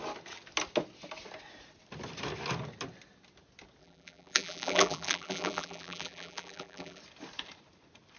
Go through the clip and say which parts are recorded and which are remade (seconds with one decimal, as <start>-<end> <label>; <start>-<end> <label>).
0.0-3.8 recorded; 3.8-7.0 remade; 7.0-8.2 recorded